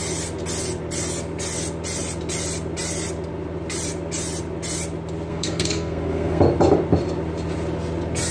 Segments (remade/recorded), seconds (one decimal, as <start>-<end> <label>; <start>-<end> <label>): 0.0-5.3 recorded; 5.3-6.4 remade; 6.4-8.3 recorded